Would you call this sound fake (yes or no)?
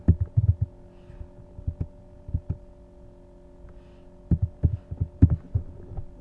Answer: no